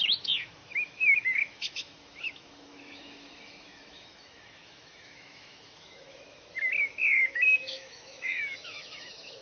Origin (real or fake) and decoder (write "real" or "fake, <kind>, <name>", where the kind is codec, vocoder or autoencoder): fake, autoencoder, DAC-VAE